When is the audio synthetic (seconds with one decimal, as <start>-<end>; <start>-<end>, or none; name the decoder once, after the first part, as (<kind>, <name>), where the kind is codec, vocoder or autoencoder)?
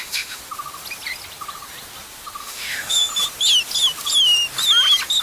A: 0.0-0.4 (autoencoder, DAC-VAE); 2.4-3.1